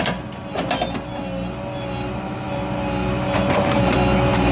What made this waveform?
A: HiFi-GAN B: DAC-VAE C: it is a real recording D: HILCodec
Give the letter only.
C